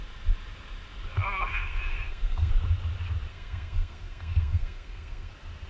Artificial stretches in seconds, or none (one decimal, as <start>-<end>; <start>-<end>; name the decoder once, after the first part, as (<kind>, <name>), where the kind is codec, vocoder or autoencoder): 1.5-2.5 (codec, SNAC); 3.3-5.3